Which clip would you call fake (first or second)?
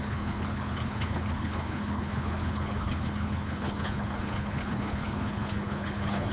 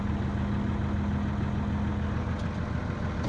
first